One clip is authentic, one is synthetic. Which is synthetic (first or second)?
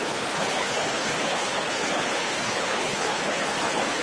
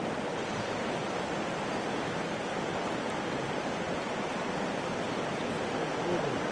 first